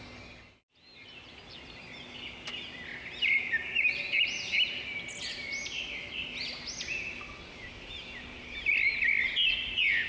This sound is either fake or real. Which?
real